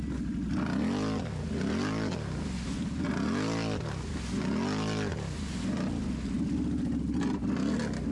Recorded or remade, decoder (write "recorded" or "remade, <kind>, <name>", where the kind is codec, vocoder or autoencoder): recorded